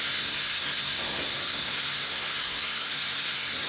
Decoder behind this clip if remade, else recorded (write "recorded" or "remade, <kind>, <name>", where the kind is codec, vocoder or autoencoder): remade, codec, SNAC